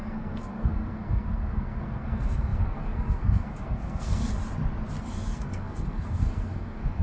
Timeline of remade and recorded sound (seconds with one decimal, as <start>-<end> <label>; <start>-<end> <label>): 0.0-4.4 remade; 4.4-5.0 recorded; 5.0-7.0 remade